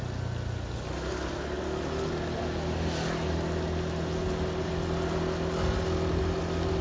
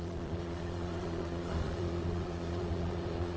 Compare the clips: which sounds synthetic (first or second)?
second